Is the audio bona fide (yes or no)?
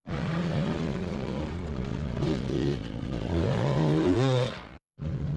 no